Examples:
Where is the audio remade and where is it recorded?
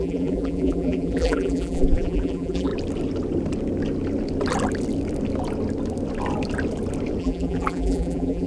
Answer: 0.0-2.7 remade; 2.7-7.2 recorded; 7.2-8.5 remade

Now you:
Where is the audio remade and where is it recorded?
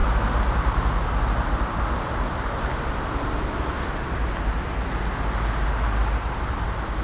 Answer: 0.0-7.0 recorded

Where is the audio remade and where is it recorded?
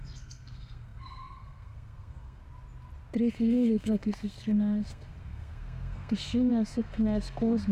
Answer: 0.0-2.4 remade; 2.4-3.3 recorded; 3.3-7.7 remade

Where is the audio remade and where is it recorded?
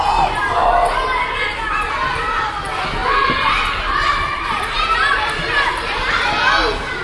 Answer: 0.0-3.0 recorded; 3.0-6.3 remade; 6.3-7.0 recorded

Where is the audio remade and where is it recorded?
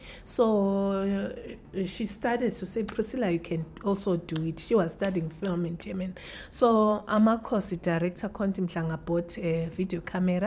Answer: 0.0-6.2 recorded; 6.2-8.7 remade; 8.7-10.5 recorded